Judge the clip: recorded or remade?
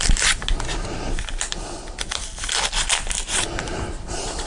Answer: recorded